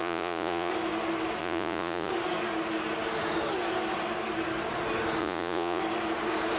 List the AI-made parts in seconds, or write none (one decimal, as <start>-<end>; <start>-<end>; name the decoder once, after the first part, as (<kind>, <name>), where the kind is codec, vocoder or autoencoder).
0.0-0.7 (vocoder, Vocos); 1.4-2.1; 5.2-5.8